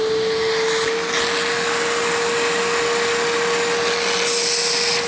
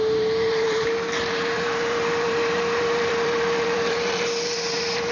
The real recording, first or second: first